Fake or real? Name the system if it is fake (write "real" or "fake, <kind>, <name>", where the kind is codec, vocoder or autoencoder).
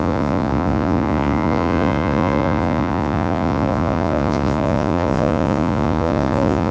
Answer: fake, vocoder, Vocos